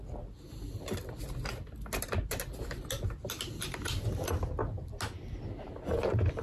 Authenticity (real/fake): real